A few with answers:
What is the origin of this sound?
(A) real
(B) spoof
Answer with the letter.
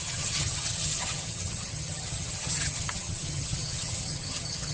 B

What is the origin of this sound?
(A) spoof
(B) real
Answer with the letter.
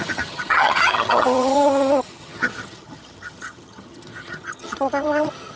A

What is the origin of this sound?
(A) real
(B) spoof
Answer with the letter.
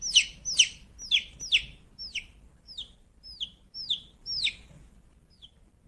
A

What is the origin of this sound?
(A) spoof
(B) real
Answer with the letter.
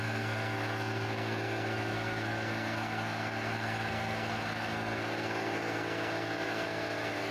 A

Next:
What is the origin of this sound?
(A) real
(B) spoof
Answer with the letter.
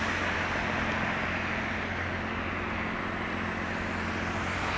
A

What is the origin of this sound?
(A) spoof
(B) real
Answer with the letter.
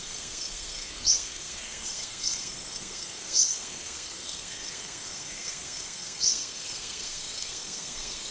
A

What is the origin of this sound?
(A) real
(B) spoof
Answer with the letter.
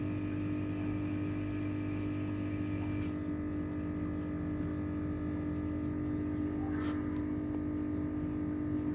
A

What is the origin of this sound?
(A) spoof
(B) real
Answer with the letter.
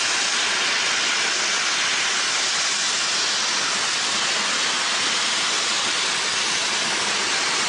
B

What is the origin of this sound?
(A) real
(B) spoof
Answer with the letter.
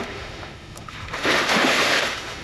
B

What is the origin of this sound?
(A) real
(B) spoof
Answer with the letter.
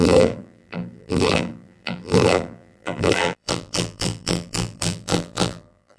B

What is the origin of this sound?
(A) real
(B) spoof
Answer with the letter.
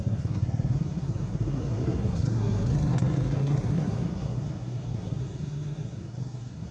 B